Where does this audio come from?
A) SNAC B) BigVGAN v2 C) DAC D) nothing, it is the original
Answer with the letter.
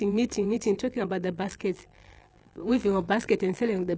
B